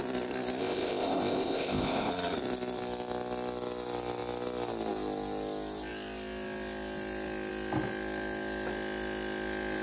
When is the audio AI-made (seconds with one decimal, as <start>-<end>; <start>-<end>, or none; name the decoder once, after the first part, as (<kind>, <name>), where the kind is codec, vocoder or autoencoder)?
0.6-2.1 (codec, ZipCodec)